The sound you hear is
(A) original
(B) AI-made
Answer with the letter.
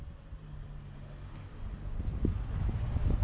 A